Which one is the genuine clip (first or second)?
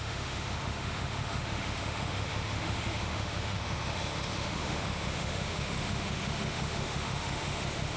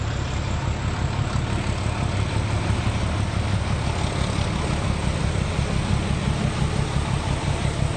second